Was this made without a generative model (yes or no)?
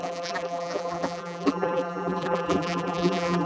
no